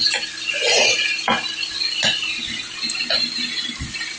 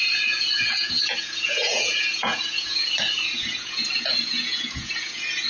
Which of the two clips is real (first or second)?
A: first